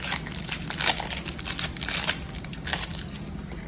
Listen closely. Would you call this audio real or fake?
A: real